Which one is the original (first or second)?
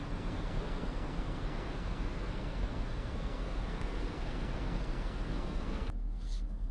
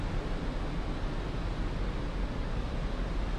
second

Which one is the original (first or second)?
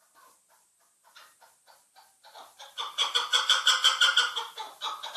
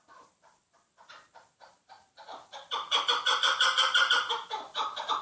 first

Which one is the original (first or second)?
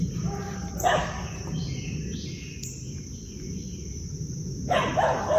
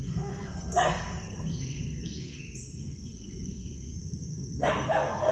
first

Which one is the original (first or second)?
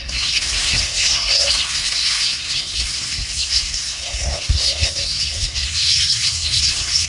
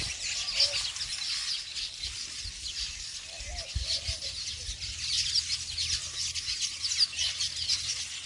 second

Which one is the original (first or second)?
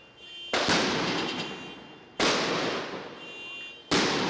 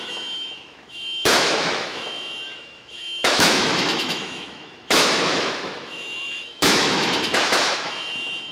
first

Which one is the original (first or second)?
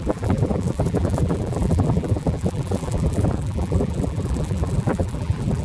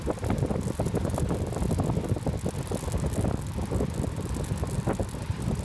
second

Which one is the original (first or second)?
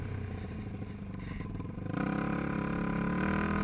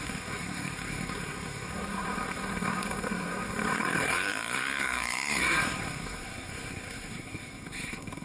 first